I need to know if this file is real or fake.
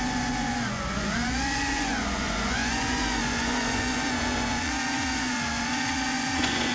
fake